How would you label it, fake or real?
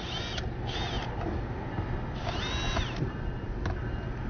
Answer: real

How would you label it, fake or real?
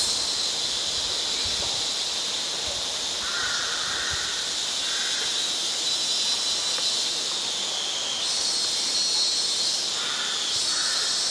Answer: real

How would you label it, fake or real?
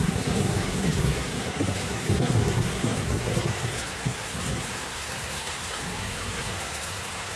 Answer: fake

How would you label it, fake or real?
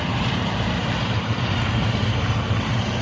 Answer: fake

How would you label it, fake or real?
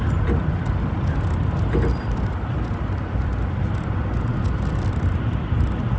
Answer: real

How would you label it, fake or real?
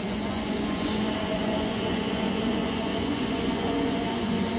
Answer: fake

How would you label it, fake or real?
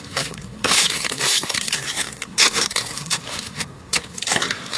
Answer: fake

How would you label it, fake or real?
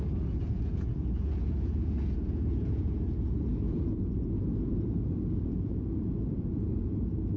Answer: fake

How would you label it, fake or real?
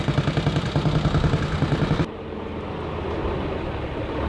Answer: real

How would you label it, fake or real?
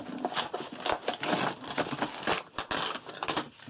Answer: real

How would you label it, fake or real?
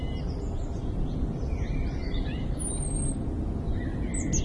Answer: real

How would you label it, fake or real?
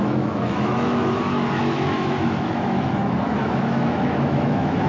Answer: fake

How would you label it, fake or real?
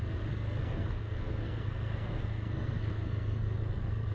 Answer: fake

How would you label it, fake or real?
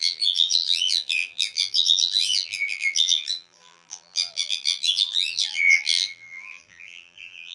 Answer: fake